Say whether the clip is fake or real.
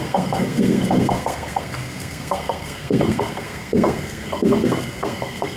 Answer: fake